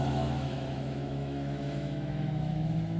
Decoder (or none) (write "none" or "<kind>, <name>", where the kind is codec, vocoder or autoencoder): autoencoder, DAC-VAE